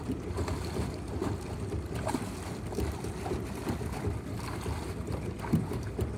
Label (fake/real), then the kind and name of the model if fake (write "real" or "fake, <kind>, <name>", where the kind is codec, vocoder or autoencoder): real